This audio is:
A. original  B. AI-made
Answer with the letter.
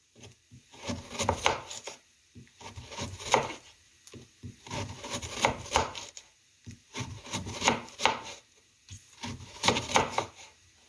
B